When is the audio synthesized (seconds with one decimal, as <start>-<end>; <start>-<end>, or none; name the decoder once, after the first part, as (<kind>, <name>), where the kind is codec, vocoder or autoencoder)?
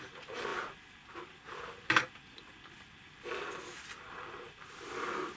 none